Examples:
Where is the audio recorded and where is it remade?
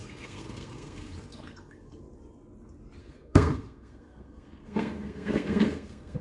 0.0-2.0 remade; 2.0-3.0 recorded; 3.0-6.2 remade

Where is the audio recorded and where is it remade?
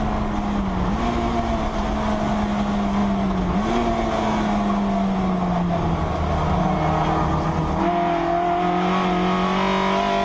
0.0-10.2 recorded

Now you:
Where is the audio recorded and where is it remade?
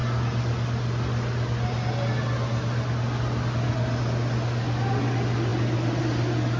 0.0-6.6 recorded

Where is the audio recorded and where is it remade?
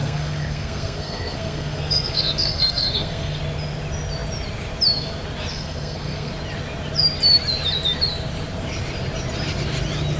0.0-3.4 remade; 3.4-5.5 recorded; 5.5-6.3 remade; 6.3-10.2 recorded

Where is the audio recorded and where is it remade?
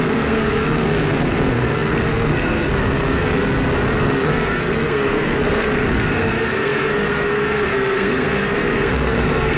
0.0-3.4 remade; 3.4-4.0 recorded; 4.0-9.6 remade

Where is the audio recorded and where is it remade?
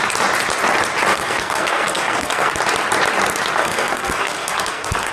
0.0-1.1 recorded; 1.1-2.5 remade; 2.5-3.6 recorded; 3.6-5.1 remade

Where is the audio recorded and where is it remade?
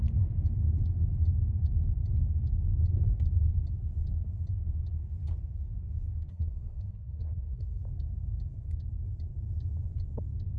0.0-6.3 recorded; 6.3-7.8 remade; 7.8-10.6 recorded